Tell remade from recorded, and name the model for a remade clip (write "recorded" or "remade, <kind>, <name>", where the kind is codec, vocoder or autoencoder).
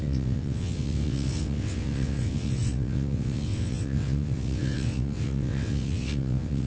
remade, vocoder, WaveNeXt